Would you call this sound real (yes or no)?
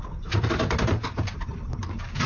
no